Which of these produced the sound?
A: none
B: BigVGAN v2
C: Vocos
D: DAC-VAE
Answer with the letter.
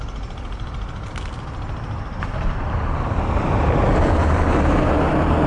A